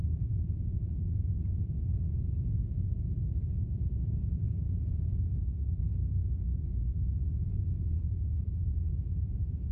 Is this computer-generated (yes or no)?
yes